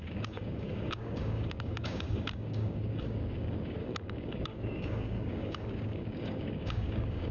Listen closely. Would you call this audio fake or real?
fake